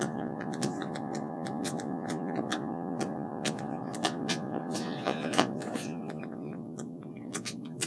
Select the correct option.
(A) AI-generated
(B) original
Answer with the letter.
A